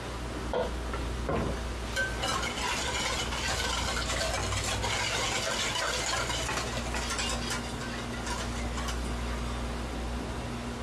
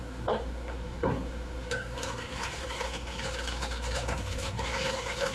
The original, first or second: first